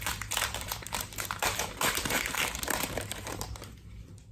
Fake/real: fake